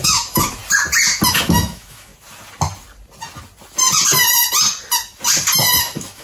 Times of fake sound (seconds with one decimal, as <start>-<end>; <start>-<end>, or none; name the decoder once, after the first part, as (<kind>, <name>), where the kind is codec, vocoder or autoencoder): 0.0-0.6 (autoencoder, DAC-VAE); 1.3-2.1; 5.8-6.2